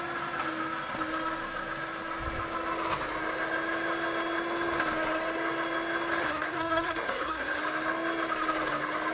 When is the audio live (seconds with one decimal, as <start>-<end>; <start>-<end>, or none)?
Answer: 0.0-6.2; 7.6-9.1